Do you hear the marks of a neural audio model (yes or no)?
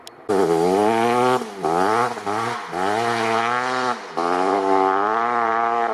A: no